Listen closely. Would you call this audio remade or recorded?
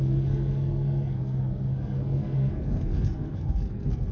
remade